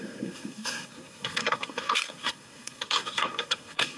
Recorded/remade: remade